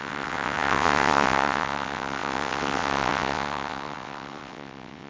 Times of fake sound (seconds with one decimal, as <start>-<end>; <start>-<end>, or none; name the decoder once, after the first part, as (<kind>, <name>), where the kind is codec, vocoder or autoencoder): 0.0-5.1 (vocoder, WaveNeXt)

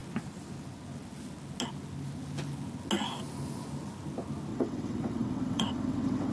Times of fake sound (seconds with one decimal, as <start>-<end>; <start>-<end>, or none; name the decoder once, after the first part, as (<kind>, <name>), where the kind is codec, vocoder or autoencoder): 4.5-6.3 (vocoder, WaveNeXt)

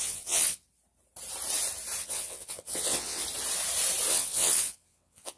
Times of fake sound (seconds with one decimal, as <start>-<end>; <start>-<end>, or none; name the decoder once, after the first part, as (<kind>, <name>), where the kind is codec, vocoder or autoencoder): 0.0-0.6 (vocoder, WaveNeXt); 2.0-3.2; 4.1-5.4

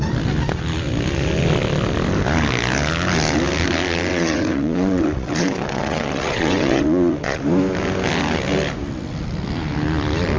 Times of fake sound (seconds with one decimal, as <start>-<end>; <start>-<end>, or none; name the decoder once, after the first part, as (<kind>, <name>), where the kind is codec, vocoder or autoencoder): 4.1-7.4 (vocoder, WaveNeXt)

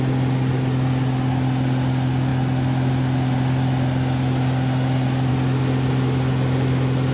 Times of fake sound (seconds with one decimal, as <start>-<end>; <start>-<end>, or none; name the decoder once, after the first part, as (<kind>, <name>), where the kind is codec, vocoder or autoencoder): none

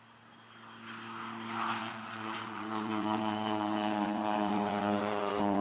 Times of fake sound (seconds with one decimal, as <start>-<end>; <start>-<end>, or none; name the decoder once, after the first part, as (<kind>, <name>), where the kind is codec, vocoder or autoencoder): 1.8-5.6 (vocoder, WaveNeXt)

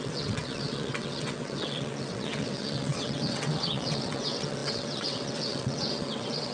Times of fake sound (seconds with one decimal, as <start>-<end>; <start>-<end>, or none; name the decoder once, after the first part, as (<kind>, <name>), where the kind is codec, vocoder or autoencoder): 0.0-6.5 (vocoder, WaveNeXt)